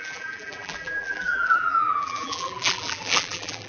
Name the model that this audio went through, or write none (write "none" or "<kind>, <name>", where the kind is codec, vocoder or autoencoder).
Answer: vocoder, BigVGAN v2